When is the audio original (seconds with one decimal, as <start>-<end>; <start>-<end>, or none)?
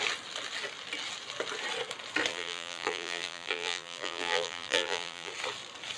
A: 0.0-2.3; 5.3-6.0